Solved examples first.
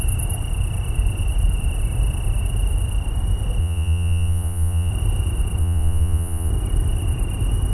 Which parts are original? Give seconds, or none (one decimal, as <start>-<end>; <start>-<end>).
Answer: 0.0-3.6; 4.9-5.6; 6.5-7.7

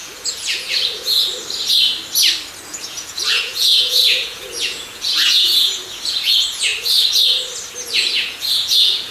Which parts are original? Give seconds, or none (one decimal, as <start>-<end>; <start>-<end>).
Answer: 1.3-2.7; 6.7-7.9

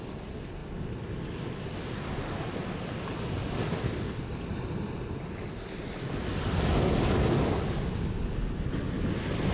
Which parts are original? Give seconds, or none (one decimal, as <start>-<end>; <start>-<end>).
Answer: 0.0-9.5